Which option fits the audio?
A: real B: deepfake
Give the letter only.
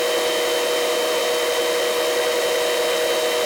A